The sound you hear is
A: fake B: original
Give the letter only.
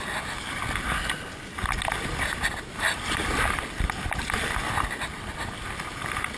B